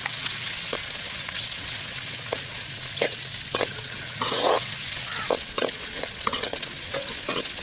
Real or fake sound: fake